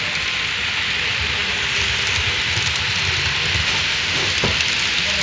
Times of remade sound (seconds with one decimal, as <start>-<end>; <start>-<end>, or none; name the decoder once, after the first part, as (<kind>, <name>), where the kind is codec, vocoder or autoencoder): 3.6-4.3 (autoencoder, DAC-VAE)